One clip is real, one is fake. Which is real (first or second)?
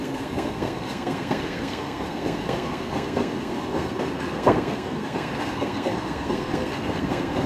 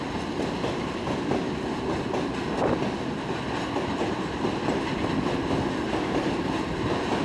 second